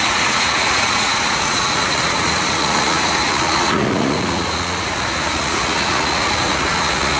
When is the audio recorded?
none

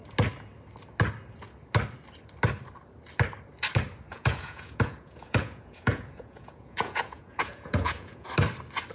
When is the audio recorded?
0.0-4.1; 8.3-8.9

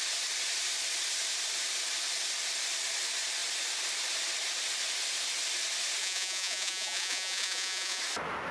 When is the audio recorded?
0.0-6.0; 8.0-8.5